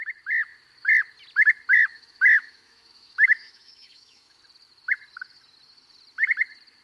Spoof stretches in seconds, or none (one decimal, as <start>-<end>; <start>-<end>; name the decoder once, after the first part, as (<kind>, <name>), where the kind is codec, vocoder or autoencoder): 1.9-4.4 (autoencoder, DAC-VAE)